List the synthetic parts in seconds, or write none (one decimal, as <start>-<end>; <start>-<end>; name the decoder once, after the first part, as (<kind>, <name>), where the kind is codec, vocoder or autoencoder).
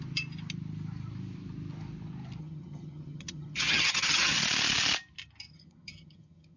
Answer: 2.4-4.4 (vocoder, HiFi-GAN); 5.5-6.6